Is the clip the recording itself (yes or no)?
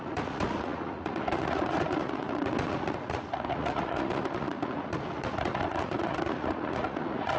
no